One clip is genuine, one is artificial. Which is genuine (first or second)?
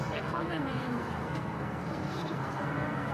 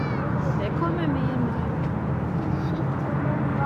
second